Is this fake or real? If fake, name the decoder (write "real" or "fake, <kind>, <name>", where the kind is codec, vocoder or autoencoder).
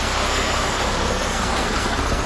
fake, codec, SNAC